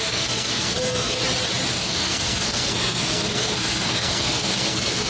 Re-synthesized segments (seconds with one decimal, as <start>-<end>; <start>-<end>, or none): 0.0-1.2; 1.7-5.1